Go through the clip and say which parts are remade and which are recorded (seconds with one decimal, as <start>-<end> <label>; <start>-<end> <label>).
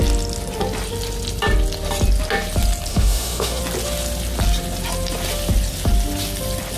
0.0-2.9 recorded; 2.9-3.6 remade; 3.6-6.8 recorded